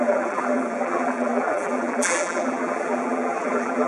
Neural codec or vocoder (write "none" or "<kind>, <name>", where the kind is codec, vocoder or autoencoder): vocoder, BigVGAN v2